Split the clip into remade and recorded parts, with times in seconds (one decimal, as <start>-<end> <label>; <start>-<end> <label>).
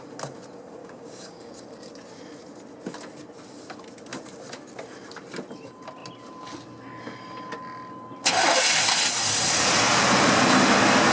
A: 0.0-0.8 recorded; 0.8-1.5 remade; 1.5-11.1 recorded